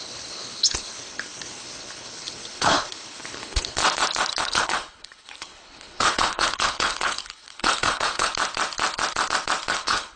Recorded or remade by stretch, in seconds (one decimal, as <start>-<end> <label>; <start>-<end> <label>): 0.0-3.8 remade; 3.8-4.4 recorded; 4.4-8.3 remade; 8.3-9.7 recorded; 9.7-10.2 remade